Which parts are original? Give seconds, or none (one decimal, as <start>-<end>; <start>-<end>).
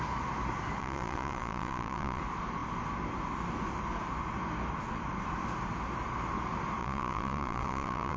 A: 0.0-0.8; 2.2-6.8